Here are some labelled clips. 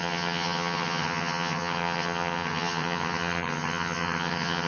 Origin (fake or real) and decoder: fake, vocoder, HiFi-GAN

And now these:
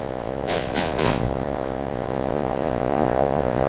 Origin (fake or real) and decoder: fake, vocoder, Vocos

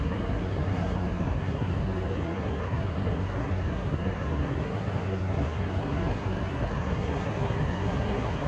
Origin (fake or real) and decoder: fake, codec, SNAC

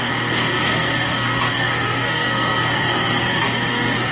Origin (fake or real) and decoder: fake, codec, SNAC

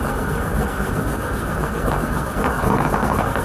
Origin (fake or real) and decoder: fake, codec, SNAC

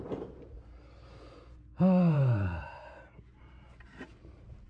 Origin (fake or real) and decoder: fake, vocoder, BigVGAN v2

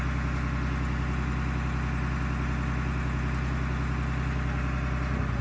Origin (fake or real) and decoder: real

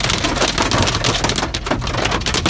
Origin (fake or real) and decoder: real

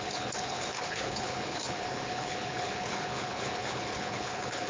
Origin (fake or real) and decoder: fake, codec, HILCodec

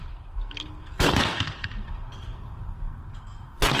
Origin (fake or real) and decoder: fake, codec, SNAC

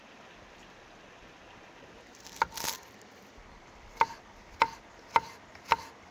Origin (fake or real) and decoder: real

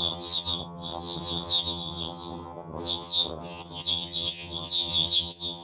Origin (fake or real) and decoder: fake, vocoder, HiFi-GAN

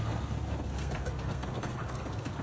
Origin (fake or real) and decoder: fake, codec, SNAC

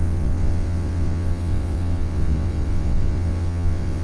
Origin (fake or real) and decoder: fake, vocoder, WaveNeXt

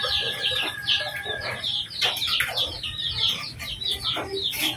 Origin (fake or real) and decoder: fake, vocoder, BigVGAN v2